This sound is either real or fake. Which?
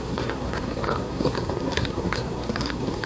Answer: fake